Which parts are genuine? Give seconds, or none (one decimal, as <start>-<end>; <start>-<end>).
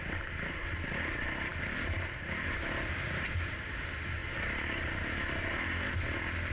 0.0-6.5